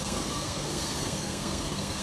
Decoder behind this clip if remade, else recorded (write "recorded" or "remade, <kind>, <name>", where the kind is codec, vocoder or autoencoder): remade, codec, SNAC